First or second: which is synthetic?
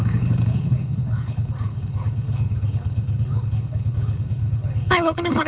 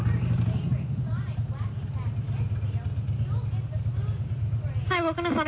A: first